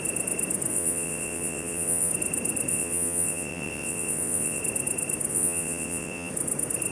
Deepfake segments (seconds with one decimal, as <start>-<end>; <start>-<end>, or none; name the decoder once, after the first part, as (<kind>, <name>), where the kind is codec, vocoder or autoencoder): 0.7-2.1 (vocoder, WaveNeXt); 2.7-4.6; 5.3-6.3